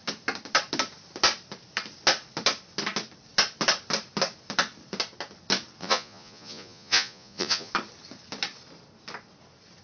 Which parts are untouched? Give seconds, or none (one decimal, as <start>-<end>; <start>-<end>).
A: 0.0-5.8; 7.7-9.8